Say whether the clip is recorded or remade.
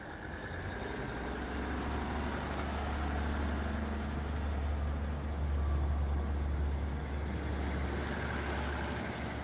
recorded